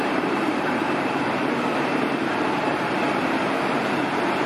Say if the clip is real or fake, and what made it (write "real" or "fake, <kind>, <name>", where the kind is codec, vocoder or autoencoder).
fake, vocoder, BigVGAN v2